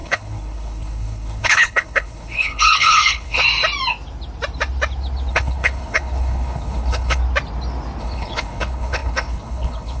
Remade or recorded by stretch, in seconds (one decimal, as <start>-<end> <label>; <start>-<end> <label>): 0.0-3.4 remade; 3.4-5.3 recorded; 5.3-7.2 remade; 7.2-8.0 recorded; 8.0-10.0 remade